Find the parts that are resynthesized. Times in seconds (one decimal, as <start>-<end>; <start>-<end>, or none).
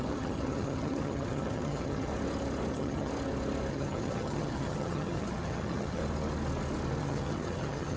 0.0-2.1; 2.7-3.1; 3.7-6.0; 7.0-8.0